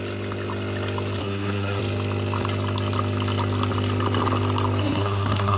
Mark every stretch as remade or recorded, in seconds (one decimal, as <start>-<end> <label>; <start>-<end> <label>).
0.0-1.2 recorded; 1.2-1.8 remade; 1.8-4.8 recorded; 4.8-5.6 remade